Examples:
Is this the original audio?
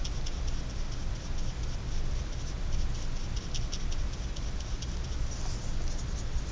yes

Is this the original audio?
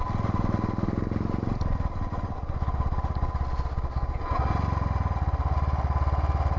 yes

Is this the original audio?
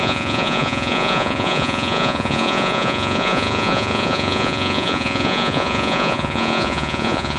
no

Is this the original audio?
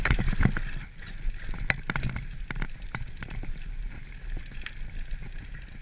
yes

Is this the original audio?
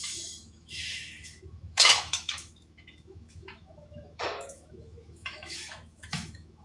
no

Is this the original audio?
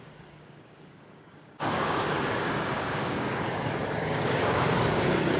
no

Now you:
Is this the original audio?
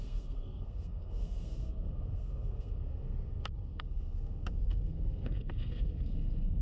no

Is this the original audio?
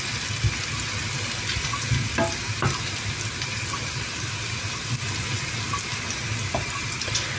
yes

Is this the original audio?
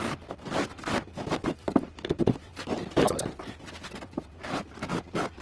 yes